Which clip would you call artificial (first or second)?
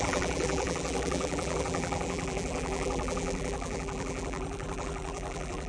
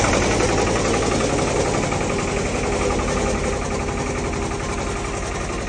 first